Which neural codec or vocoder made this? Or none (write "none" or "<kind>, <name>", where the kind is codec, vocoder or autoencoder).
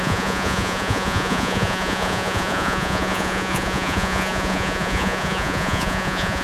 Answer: vocoder, Vocos